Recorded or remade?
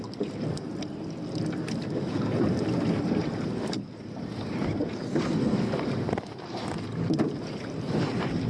remade